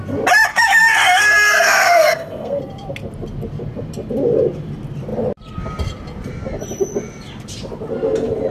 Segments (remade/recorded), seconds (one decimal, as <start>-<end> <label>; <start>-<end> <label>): 0.0-0.5 recorded; 0.5-2.6 remade; 2.6-8.5 recorded